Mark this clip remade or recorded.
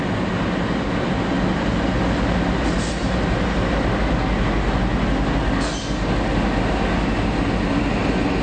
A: recorded